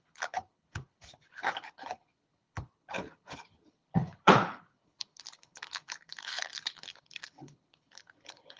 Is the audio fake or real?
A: fake